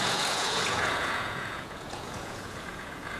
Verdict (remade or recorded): remade